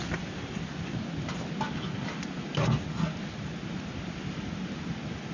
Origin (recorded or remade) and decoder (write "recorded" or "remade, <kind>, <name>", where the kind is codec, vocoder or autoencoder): recorded